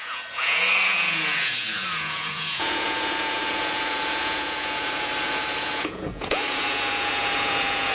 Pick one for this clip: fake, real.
fake